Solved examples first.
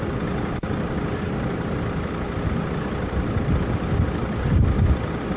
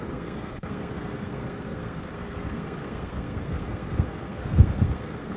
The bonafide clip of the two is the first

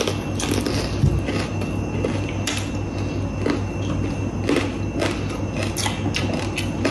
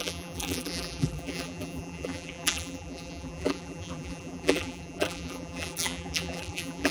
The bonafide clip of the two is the first